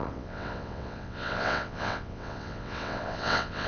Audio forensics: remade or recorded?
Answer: remade